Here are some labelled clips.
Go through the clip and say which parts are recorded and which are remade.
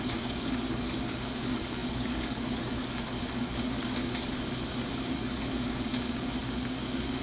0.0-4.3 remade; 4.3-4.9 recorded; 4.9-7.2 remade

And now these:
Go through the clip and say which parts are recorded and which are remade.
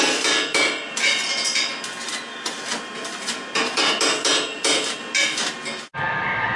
0.0-6.6 recorded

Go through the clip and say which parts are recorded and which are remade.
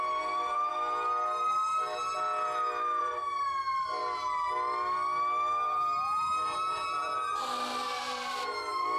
0.0-0.7 remade; 0.7-3.0 recorded; 3.0-4.0 remade; 4.0-6.2 recorded; 6.2-9.0 remade